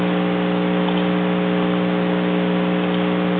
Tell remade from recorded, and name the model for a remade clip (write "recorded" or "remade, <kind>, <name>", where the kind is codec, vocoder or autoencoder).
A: recorded